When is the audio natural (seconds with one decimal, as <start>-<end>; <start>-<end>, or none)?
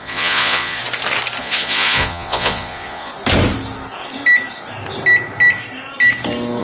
0.8-1.4; 3.1-6.6